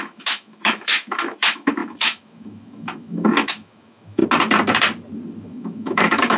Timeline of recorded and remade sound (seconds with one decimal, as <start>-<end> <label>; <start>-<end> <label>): 0.0-4.2 remade; 4.2-5.4 recorded; 5.4-6.4 remade